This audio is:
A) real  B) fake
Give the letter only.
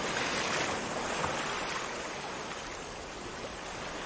A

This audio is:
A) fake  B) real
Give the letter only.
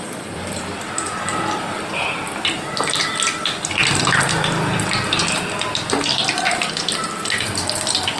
A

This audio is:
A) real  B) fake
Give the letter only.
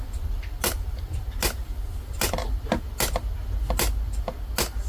A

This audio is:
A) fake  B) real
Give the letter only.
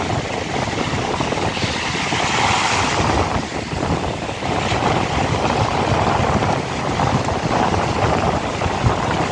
A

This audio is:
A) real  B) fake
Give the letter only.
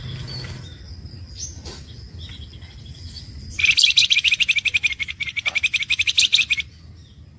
B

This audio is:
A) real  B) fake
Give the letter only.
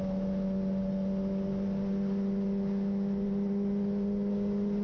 A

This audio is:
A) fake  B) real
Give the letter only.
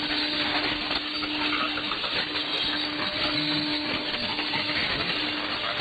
B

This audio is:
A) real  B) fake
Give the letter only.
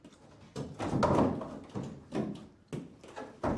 A